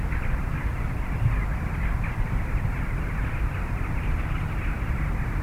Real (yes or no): yes